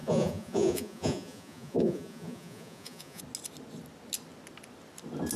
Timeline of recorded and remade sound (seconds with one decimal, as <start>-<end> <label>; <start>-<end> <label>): 0.0-3.2 remade; 3.2-5.4 recorded